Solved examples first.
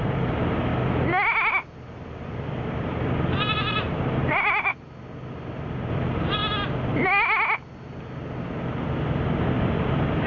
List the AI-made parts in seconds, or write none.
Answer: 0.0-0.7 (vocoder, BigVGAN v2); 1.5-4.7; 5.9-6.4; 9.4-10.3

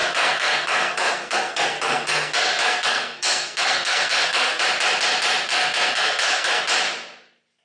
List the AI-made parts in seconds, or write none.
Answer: 0.0-4.6 (codec, SNAC); 5.5-6.6

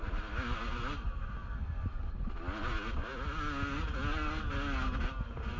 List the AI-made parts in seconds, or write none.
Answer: none

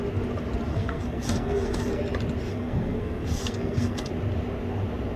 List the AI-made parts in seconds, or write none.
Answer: 0.7-2.0 (codec, SNAC); 2.5-4.1